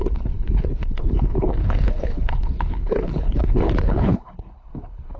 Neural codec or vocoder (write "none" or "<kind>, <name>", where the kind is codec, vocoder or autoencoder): codec, HILCodec